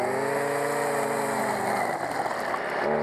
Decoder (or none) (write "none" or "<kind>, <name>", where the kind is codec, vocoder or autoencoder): none